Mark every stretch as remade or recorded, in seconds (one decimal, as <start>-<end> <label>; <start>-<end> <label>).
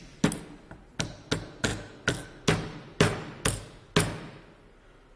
0.0-5.2 recorded